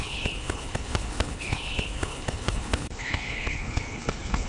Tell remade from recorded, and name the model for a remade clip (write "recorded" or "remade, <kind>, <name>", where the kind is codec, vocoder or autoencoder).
remade, codec, HILCodec